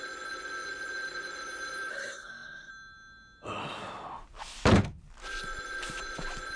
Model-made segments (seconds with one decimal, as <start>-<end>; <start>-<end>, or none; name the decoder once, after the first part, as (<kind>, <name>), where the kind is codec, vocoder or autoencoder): 1.9-2.7 (codec, SNAC)